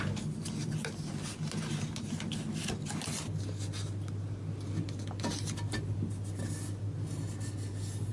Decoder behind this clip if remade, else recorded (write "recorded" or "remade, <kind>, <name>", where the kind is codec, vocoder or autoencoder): recorded